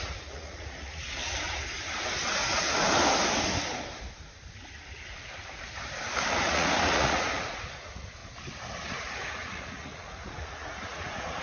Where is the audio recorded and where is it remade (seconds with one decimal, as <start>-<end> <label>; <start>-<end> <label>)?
0.0-1.2 remade; 1.2-6.3 recorded; 6.3-8.2 remade; 8.2-8.9 recorded; 8.9-11.4 remade